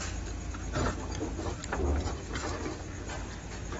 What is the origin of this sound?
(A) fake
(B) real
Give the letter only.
B